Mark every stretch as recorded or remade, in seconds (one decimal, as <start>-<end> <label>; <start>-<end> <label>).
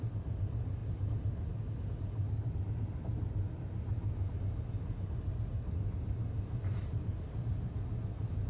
0.0-8.5 recorded